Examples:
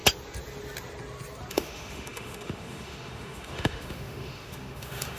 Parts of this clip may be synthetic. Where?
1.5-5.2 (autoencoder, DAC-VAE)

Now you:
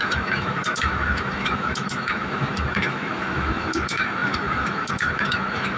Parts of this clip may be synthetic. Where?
0.0-5.8 (autoencoder, DAC-VAE)

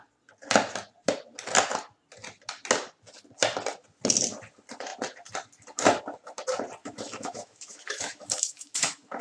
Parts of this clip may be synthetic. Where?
6.8-9.2 (autoencoder, DAC-VAE)

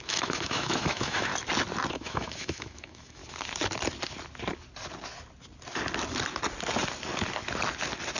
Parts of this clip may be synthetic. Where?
0.0-1.3 (autoencoder, DAC-VAE); 1.9-3.2